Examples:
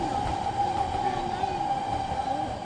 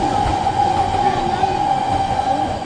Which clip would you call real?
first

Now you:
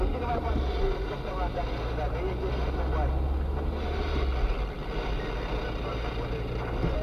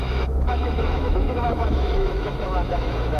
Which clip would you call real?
first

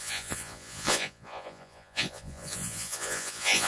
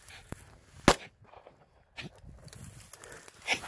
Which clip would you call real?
second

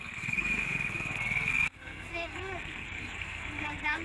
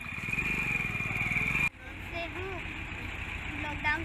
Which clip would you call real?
second